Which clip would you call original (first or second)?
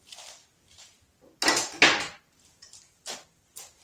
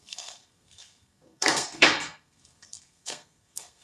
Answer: first